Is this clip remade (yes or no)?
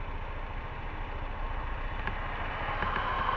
no